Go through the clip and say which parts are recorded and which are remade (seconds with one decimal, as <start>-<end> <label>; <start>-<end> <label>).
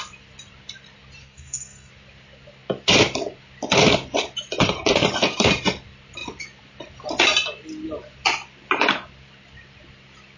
0.0-1.2 recorded; 1.2-1.9 remade; 1.9-10.4 recorded